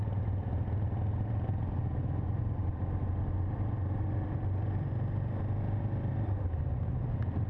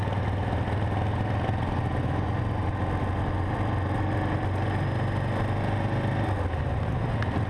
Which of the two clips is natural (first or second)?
second